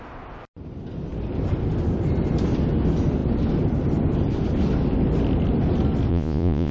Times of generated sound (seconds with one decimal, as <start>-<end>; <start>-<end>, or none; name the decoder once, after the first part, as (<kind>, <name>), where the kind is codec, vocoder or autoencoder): 6.1-6.7 (vocoder, Vocos)